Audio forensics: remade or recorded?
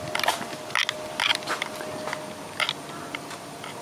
recorded